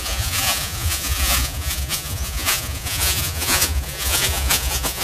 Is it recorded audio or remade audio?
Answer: remade